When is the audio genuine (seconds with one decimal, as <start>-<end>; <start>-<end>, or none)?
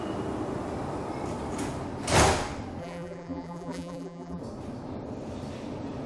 0.0-2.8; 4.4-6.1